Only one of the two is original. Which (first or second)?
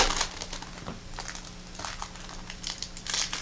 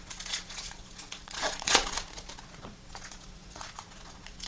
first